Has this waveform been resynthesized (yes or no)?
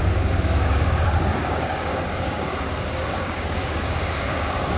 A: yes